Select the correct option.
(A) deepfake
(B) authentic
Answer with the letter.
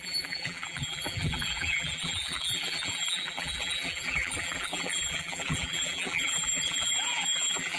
A